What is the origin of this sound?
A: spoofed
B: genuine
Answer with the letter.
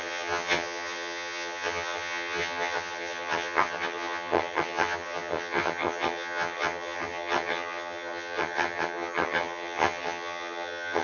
A